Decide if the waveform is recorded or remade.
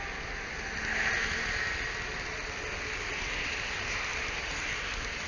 recorded